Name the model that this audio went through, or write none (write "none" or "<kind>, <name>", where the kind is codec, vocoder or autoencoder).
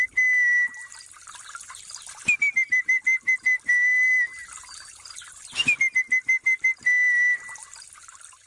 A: none